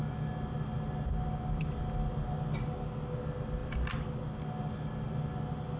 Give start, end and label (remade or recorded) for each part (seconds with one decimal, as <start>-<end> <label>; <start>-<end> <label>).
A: 0.0-5.8 recorded